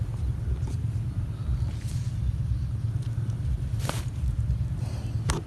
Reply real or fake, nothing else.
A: real